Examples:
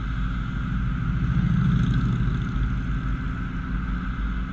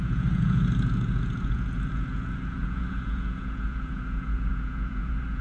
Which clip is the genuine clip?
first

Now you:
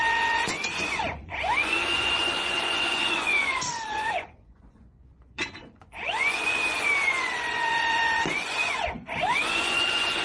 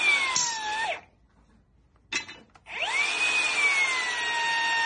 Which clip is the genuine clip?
second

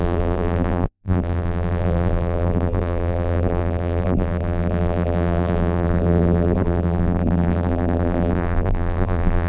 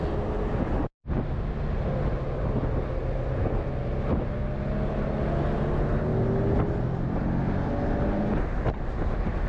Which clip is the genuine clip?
second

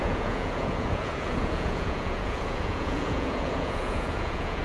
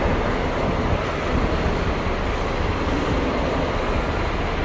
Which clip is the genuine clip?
second